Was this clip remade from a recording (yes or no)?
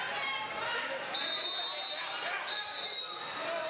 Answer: no